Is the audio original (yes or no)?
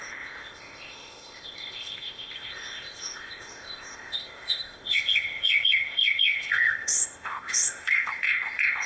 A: no